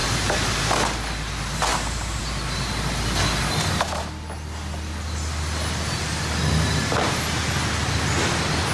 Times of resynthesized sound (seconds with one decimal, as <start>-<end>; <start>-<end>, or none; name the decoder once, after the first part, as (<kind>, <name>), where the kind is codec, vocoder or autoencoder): 0.0-0.6 (vocoder, BigVGAN v2); 1.7-2.2